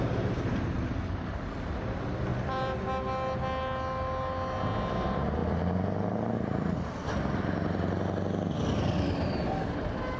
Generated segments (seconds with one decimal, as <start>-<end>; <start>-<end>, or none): 2.3-2.8; 5.4-7.4